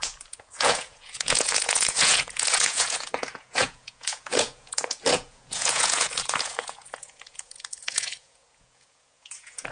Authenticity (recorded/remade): remade